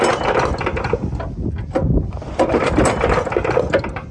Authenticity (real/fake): real